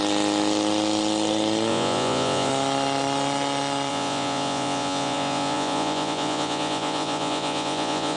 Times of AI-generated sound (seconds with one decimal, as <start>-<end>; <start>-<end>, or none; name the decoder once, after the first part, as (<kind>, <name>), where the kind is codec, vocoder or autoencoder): 1.7-2.5 (vocoder, Vocos); 3.9-8.2